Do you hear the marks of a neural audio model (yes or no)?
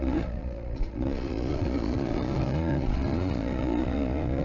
yes